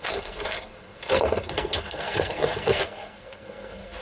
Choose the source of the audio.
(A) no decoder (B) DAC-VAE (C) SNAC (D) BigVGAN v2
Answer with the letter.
C